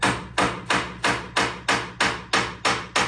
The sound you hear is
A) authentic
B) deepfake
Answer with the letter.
A